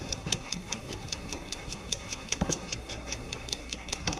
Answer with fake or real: fake